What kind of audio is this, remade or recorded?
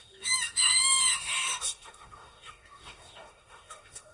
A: remade